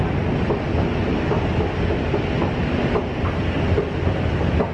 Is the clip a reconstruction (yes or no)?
no